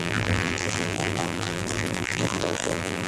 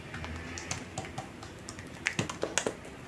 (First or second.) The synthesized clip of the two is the first